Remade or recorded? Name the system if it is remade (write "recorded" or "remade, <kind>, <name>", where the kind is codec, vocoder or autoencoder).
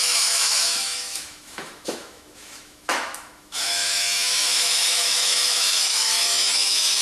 remade, autoencoder, DAC-VAE